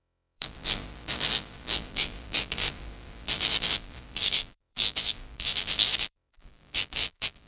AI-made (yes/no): yes